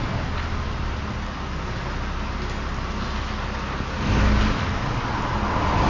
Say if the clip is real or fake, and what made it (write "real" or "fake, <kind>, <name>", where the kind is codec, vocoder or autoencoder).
real